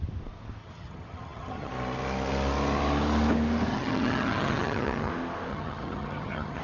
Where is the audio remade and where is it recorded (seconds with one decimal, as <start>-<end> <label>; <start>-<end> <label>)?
0.0-0.6 recorded; 0.6-1.7 remade; 1.7-3.7 recorded; 3.7-5.1 remade; 5.1-5.5 recorded; 5.5-6.6 remade